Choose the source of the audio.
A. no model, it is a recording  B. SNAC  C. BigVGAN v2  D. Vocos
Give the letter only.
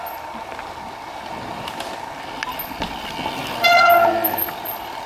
A